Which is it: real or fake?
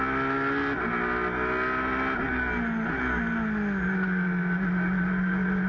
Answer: real